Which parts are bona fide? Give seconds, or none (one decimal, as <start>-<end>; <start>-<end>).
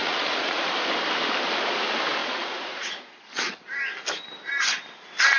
0.7-2.2; 3.2-5.4